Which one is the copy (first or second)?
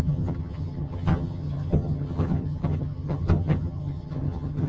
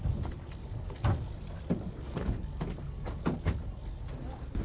first